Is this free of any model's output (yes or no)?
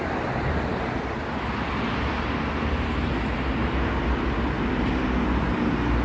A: yes